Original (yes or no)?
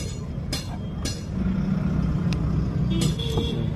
yes